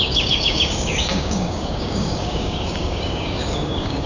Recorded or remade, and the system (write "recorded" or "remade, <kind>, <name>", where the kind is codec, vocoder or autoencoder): remade, codec, DAC